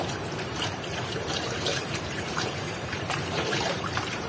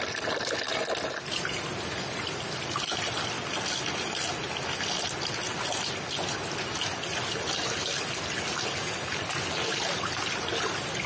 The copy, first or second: first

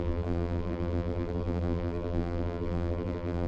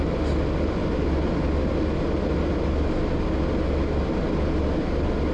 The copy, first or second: first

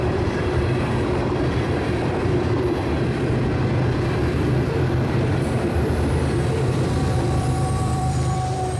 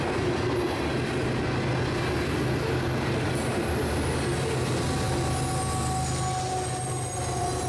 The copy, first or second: first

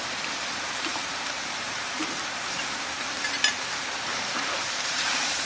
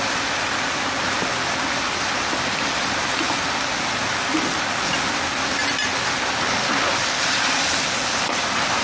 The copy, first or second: first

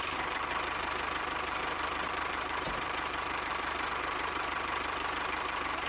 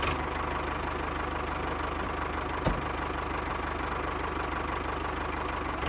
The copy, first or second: first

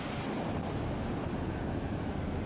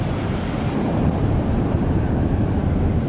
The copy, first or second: second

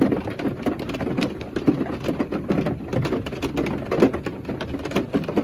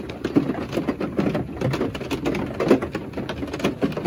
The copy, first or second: first